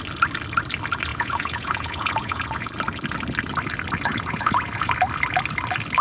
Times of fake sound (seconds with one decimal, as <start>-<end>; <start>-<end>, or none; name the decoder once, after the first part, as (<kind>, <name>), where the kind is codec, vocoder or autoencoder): 1.1-2.7 (vocoder, Vocos); 4.1-4.9